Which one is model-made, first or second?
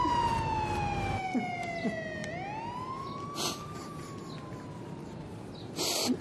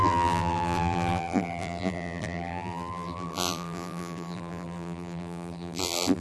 second